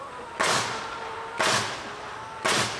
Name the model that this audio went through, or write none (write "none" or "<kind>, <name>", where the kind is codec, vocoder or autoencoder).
none